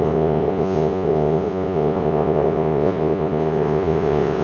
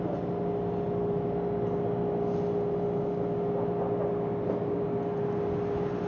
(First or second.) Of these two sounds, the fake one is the first